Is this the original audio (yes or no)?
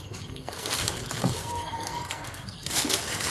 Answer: no